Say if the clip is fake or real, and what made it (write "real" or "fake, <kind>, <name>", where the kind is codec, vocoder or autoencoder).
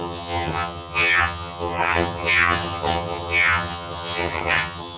fake, vocoder, HiFi-GAN